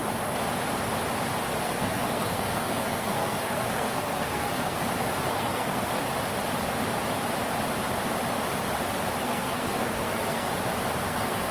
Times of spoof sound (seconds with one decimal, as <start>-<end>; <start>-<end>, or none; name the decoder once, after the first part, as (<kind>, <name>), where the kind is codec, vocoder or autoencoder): 1.6-4.8 (codec, SNAC); 5.3-5.9; 9.2-10.5; 11.0-11.5